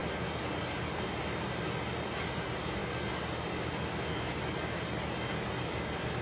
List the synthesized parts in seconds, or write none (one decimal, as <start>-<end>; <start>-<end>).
none